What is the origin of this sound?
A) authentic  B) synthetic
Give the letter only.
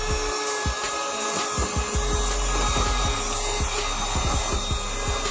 A